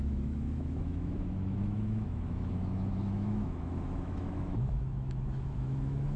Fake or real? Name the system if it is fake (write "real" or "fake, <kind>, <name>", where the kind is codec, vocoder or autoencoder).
fake, autoencoder, DAC-VAE